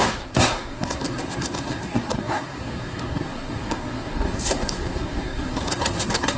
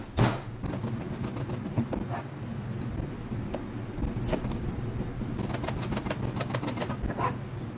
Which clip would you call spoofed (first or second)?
first